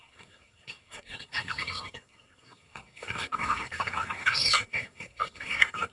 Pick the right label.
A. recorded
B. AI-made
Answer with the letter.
B